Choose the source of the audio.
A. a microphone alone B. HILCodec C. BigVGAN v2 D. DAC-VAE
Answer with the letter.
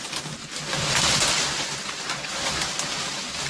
A